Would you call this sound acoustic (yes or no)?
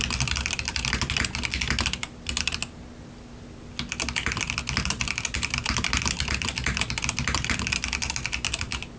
yes